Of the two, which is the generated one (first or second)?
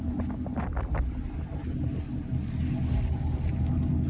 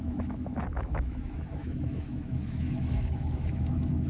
second